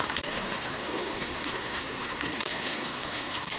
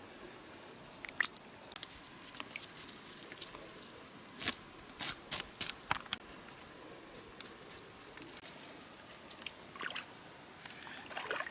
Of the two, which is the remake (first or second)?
first